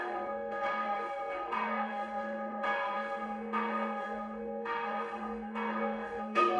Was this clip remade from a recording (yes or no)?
yes